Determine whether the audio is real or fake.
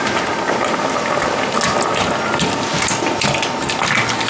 real